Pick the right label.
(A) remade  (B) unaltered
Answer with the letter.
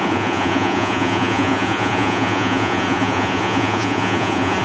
A